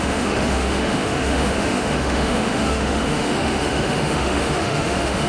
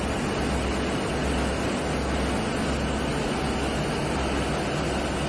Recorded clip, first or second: second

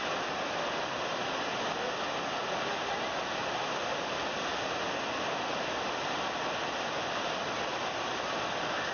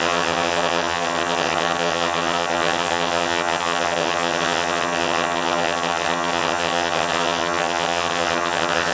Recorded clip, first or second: first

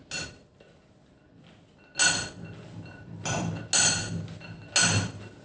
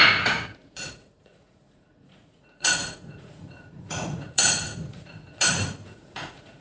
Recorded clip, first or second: first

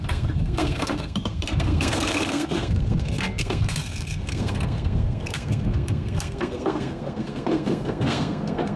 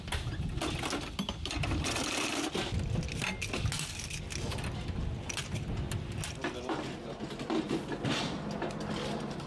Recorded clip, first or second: second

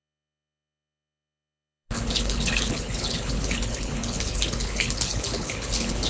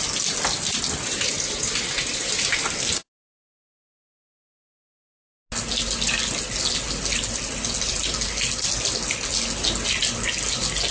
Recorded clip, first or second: second